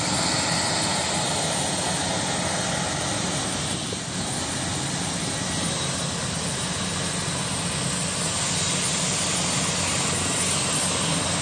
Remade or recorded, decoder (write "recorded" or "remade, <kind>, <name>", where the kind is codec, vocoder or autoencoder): recorded